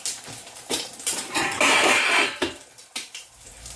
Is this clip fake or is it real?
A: fake